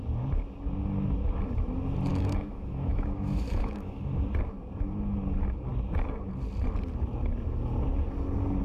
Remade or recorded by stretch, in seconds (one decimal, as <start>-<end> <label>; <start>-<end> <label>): 0.0-2.1 recorded; 2.1-4.3 remade; 4.3-8.6 recorded